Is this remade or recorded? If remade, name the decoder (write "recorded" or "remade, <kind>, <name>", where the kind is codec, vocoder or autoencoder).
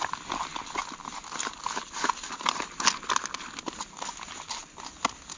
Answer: recorded